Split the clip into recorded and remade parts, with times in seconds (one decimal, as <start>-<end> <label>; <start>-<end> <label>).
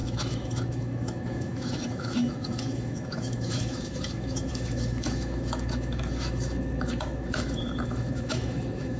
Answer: 0.0-9.0 remade